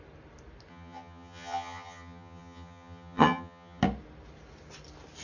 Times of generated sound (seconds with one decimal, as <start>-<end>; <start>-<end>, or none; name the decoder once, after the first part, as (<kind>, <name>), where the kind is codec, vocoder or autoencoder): 0.7-3.8 (vocoder, HiFi-GAN)